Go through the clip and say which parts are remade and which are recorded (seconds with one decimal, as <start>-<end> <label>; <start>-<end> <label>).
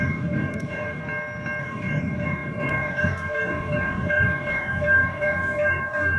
0.0-1.0 remade; 1.0-1.6 recorded; 1.6-6.2 remade